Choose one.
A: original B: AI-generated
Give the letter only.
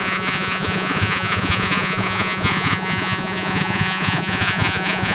B